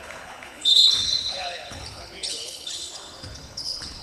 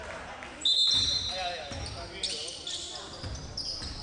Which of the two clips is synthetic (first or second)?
first